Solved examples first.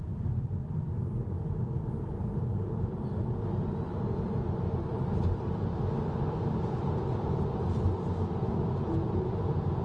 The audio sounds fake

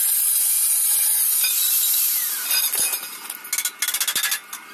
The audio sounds real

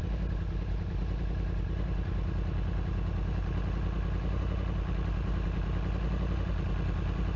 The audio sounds real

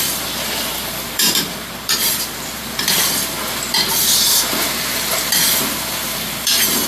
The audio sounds fake